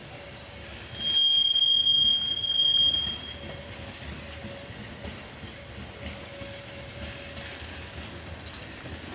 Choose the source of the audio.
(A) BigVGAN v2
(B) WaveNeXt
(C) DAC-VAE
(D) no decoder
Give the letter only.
D